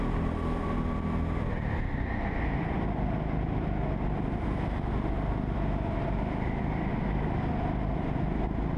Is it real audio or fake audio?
real